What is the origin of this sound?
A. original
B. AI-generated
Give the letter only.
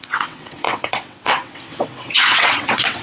B